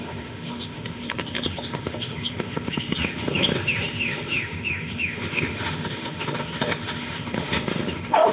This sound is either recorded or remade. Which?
remade